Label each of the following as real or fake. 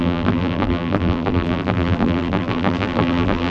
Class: fake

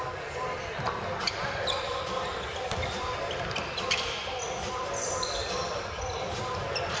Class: fake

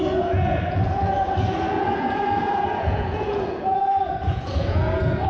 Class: fake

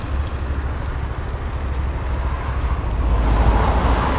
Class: real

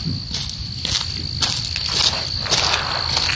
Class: real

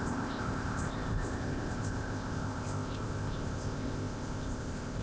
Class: fake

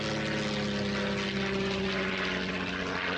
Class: real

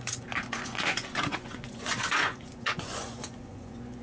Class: fake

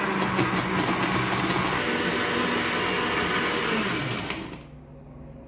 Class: real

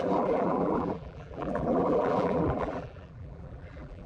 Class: fake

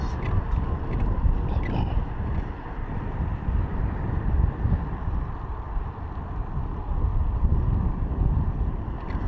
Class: fake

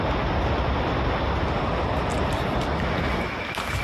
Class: real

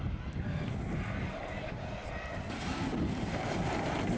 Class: real